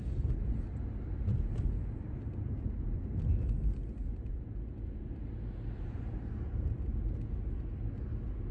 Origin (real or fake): real